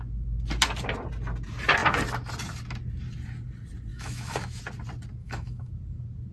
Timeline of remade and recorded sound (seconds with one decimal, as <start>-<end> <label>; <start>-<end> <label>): 0.0-3.9 recorded; 3.9-4.6 remade; 4.6-5.2 recorded; 5.2-5.7 remade; 5.7-6.3 recorded